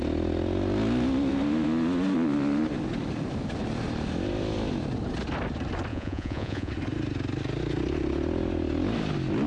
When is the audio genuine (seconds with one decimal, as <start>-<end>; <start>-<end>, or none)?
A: 0.0-5.9; 6.7-9.5